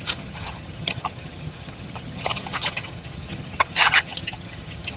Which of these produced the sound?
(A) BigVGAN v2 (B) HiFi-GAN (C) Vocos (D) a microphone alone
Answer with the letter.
B